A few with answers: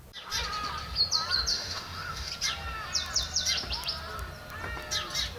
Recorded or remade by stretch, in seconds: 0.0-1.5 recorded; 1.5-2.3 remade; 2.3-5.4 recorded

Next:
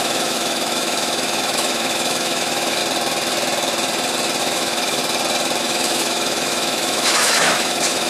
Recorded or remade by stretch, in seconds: 0.0-2.8 remade; 2.8-4.4 recorded; 4.4-5.0 remade; 5.0-5.6 recorded; 5.6-8.1 remade